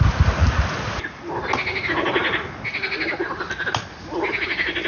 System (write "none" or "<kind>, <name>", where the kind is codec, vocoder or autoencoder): none